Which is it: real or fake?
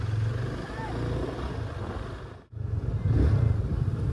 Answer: real